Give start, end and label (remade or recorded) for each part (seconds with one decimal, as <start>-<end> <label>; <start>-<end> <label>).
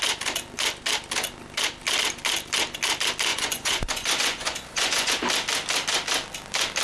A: 0.0-3.3 recorded; 3.3-5.1 remade; 5.1-6.8 recorded